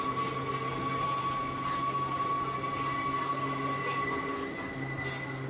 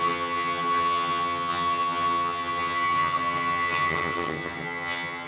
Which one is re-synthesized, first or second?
second